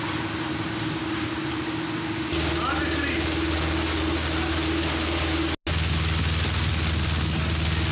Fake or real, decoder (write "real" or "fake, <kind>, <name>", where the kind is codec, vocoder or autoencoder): real